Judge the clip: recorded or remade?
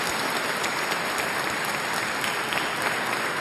recorded